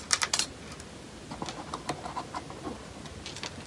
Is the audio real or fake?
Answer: real